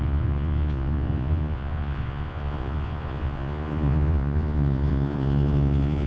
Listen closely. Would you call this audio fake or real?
fake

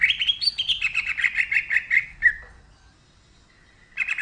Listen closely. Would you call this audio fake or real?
real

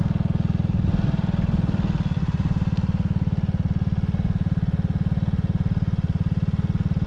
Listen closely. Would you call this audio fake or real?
real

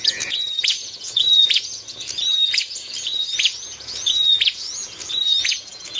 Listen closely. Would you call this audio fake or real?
fake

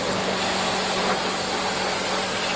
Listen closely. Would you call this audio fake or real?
real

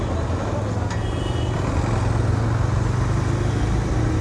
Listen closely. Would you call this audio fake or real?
real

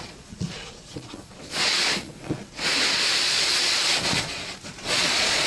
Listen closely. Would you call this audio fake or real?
fake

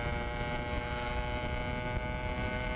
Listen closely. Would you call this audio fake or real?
real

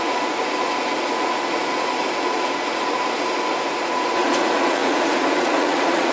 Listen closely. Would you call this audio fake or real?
fake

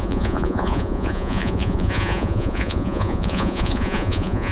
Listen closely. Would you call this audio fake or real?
fake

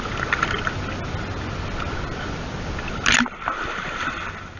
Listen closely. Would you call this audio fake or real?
real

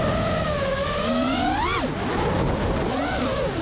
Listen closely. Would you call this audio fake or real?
real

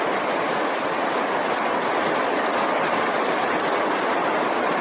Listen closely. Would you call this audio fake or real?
real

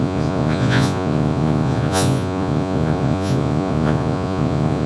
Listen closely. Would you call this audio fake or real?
fake